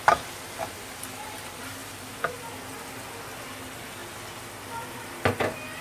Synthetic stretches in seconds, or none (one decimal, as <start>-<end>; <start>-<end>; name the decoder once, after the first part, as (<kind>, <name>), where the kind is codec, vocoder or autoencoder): 0.0-1.8 (vocoder, BigVGAN v2); 3.5-4.0; 4.9-5.8

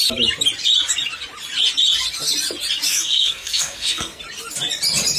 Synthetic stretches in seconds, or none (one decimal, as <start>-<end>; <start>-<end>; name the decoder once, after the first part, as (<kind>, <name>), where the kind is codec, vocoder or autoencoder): 2.9-4.2 (codec, SNAC)

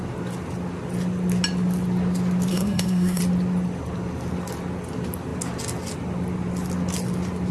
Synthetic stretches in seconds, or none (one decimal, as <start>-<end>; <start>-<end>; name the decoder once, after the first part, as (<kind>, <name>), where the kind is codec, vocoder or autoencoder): 2.5-3.2 (codec, SNAC)

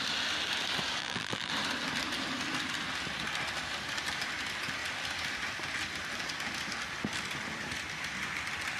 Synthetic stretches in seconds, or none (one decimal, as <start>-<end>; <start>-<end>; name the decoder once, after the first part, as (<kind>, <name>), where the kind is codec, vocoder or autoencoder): 1.0-1.5 (vocoder, BigVGAN v2)

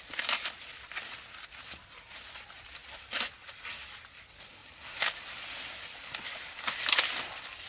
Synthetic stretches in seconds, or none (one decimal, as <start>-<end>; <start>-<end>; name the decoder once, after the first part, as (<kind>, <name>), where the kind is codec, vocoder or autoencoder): 2.8-3.7 (vocoder, BigVGAN v2); 4.6-7.2

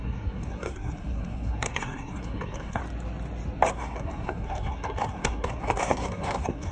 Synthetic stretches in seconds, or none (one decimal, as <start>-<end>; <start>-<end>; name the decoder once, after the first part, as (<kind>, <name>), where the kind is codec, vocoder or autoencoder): 0.0-2.8 (codec, SNAC); 3.7-6.7

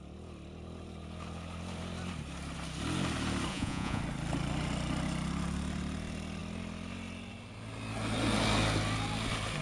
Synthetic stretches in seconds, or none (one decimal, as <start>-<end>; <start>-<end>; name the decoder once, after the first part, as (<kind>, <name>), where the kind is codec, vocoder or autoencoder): 3.5-4.0 (vocoder, Vocos)